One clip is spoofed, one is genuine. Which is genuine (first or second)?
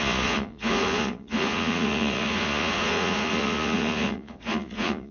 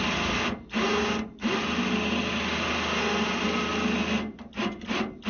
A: second